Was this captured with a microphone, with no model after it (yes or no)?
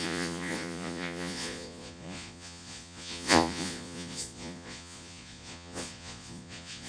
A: no